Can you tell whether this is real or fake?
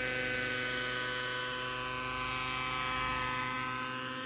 real